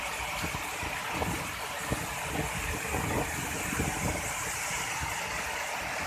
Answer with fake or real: real